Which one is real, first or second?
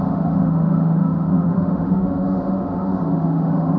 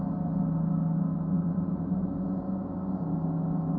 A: second